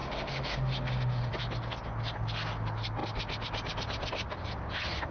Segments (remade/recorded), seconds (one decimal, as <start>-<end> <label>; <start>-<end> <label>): 0.0-1.3 remade; 1.3-5.1 recorded